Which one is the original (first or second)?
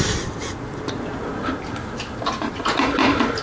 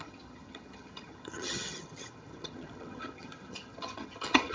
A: first